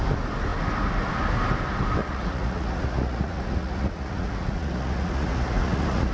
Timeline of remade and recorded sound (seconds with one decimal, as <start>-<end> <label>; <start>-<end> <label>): 0.0-2.0 recorded; 2.0-6.1 remade